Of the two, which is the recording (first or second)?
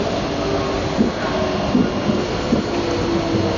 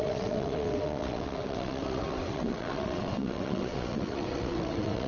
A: first